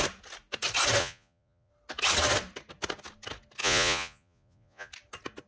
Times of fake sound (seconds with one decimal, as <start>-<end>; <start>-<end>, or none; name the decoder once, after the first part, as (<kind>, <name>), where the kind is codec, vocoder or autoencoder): 1.0-1.7 (vocoder, Vocos); 3.6-4.9

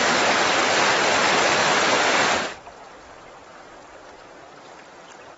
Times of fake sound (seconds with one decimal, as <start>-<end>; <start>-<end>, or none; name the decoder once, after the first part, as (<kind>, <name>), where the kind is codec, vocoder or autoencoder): 1.6-4.8 (vocoder, BigVGAN v2)

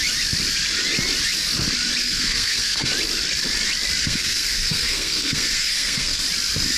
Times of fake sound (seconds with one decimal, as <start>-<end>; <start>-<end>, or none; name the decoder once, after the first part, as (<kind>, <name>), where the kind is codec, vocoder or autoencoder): 2.0-2.9 (codec, SNAC); 4.0-6.2

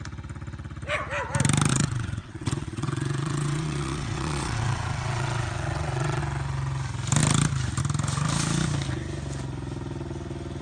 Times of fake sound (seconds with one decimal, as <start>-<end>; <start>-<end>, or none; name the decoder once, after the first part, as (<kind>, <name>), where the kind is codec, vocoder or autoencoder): 1.7-6.2 (vocoder, WaveNeXt)

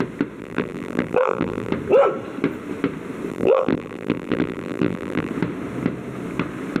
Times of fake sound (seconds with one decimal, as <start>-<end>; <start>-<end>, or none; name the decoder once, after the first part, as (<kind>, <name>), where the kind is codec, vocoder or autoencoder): 0.4-1.7 (vocoder, BigVGAN v2); 3.3-5.3

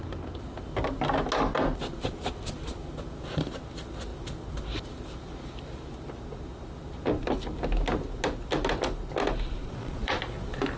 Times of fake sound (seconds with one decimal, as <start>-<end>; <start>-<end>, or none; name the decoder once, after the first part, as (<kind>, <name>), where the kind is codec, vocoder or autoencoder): 9.6-10.2 (vocoder, Vocos)

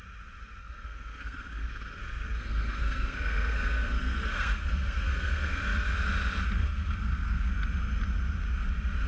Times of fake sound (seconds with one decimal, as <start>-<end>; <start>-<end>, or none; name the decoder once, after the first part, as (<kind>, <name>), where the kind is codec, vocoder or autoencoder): 0.6-5.6 (codec, SNAC); 6.6-7.5

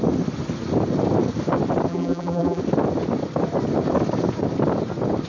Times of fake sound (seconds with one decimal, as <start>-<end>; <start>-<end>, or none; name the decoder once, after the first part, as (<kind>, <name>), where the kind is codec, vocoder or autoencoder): 1.9-2.6 (vocoder, BigVGAN v2)